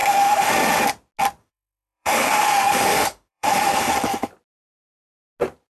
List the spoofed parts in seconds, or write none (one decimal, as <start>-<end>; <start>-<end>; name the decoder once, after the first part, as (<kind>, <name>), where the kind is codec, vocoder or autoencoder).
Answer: 0.0-0.5 (autoencoder, DAC-VAE); 1.4-3.9